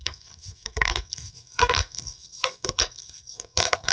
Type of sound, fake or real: fake